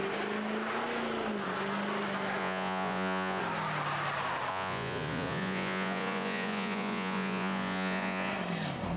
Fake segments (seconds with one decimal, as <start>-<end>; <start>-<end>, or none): 2.4-3.4; 4.5-8.3